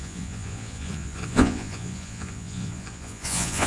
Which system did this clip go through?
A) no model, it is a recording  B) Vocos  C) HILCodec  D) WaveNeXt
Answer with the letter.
B